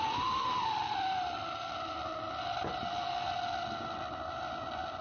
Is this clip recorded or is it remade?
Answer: recorded